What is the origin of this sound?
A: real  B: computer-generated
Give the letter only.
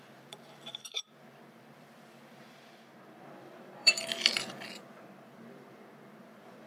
B